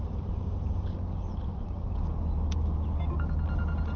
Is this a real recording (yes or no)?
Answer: yes